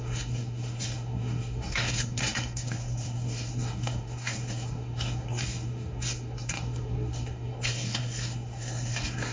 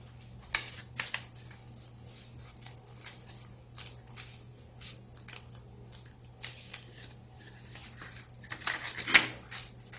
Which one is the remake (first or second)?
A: first